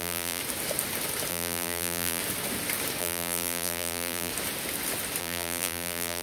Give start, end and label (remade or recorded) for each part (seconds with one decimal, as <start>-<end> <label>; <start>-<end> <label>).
0.0-0.4 remade; 0.4-1.3 recorded; 1.3-2.2 remade; 2.2-3.0 recorded; 3.0-4.3 remade; 4.3-5.2 recorded; 5.2-6.2 remade